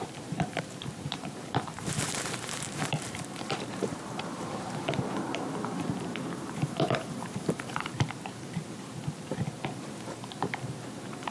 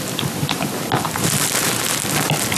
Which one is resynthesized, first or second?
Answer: first